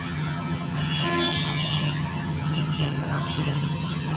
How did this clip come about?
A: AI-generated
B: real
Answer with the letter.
A